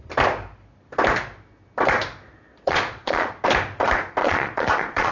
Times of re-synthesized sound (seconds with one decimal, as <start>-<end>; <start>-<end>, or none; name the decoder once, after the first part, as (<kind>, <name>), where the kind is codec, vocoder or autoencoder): 2.5-3.3 (vocoder, Vocos); 4.2-5.1